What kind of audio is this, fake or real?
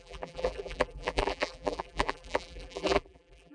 fake